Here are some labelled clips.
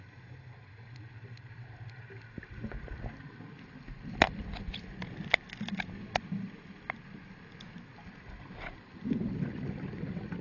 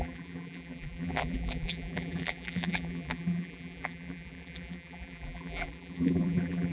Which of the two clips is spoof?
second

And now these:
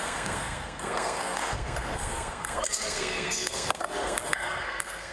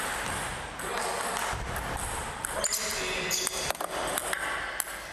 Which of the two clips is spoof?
first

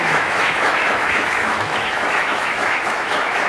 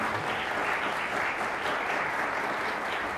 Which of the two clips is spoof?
first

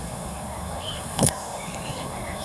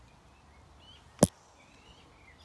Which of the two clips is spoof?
first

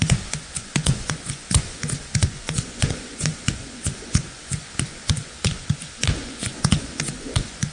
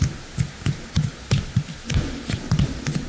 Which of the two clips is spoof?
first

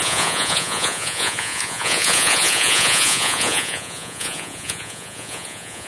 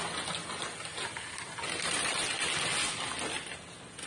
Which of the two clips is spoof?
first